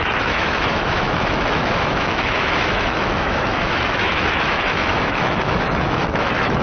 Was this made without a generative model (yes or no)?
no